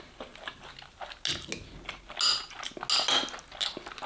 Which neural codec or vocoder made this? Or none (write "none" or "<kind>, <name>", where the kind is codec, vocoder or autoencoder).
none